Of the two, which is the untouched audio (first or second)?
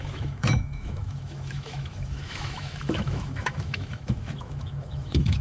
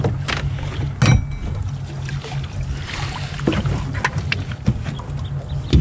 second